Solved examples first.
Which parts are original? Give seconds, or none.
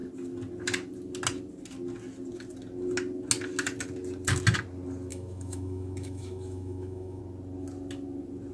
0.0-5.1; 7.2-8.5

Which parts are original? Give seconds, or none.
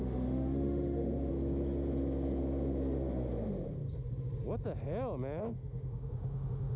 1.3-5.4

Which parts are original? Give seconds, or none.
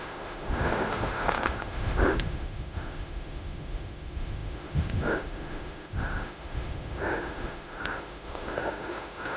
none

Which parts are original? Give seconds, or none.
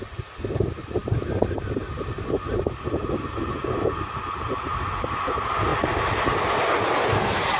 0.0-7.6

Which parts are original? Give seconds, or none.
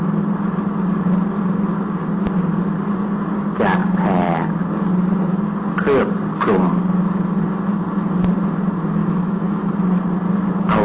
0.0-9.0; 9.7-10.8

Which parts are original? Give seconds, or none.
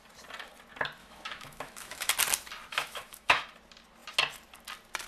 0.0-1.0; 2.1-2.7; 3.4-5.1